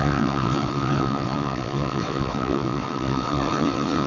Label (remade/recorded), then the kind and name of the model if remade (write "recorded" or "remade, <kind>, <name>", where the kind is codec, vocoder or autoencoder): remade, vocoder, WaveNeXt